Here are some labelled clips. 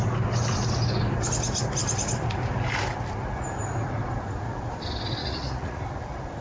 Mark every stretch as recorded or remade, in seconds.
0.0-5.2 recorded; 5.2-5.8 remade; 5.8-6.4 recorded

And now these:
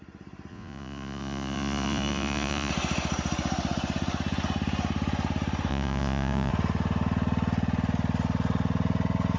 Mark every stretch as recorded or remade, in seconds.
0.0-0.5 recorded; 0.5-2.7 remade; 2.7-5.7 recorded; 5.7-6.5 remade; 6.5-9.4 recorded